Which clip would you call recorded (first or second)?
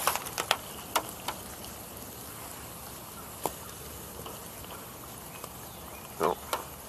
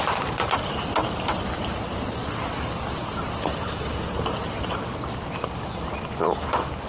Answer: first